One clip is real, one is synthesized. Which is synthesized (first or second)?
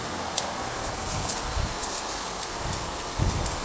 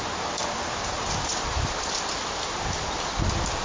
first